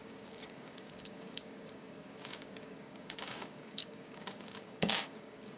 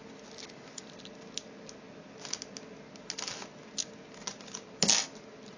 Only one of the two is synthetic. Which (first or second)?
first